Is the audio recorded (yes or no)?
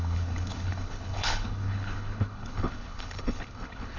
no